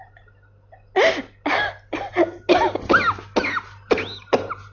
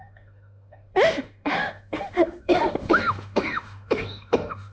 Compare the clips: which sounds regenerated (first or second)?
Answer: second